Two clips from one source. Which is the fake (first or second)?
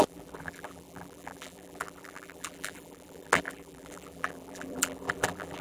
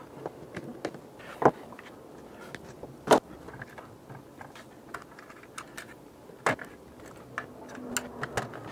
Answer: first